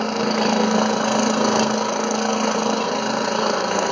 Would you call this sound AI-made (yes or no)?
yes